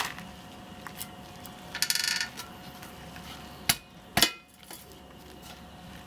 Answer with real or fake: real